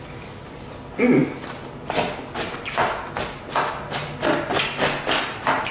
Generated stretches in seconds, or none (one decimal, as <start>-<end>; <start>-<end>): none